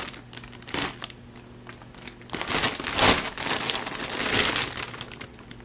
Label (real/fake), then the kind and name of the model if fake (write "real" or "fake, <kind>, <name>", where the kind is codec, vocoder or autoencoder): real